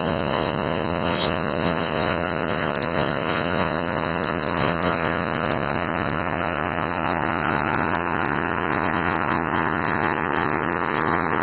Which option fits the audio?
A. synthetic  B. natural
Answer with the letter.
A